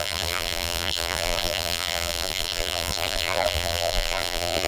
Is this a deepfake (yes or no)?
yes